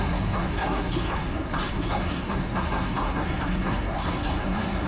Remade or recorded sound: remade